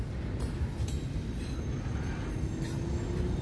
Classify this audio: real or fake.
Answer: real